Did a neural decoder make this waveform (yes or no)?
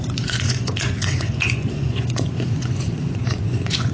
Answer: yes